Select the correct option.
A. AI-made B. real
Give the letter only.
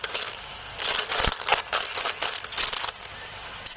B